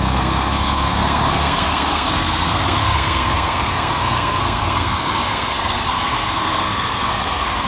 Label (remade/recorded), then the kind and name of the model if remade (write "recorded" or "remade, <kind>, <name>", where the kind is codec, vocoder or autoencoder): remade, codec, SNAC